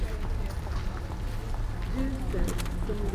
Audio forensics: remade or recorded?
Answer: recorded